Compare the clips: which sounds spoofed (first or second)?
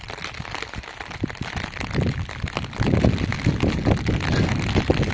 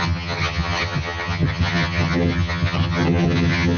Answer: second